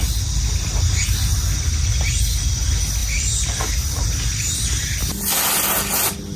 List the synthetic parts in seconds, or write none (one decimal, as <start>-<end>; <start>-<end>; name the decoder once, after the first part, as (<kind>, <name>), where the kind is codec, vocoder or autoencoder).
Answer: none